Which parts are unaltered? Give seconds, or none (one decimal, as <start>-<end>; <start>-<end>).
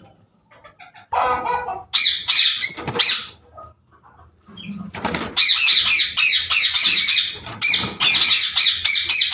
0.0-9.3